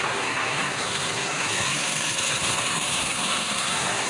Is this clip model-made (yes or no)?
yes